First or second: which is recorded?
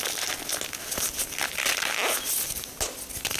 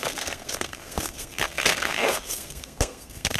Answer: first